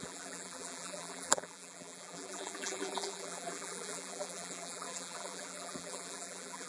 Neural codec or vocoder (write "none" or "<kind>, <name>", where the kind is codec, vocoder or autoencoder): vocoder, BigVGAN v2